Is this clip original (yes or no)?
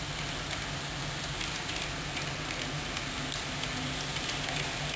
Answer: yes